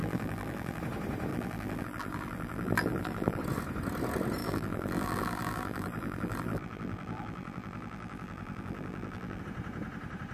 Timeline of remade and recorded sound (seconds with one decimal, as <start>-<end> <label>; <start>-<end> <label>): 0.0-0.8 remade; 0.8-1.3 recorded; 1.3-3.4 remade; 3.4-4.4 recorded; 4.4-9.4 remade; 9.4-10.3 recorded